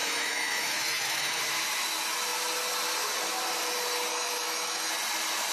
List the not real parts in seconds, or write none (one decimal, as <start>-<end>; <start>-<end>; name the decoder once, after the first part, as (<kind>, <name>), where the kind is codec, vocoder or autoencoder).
0.0-1.4 (autoencoder, DAC-VAE); 4.1-4.9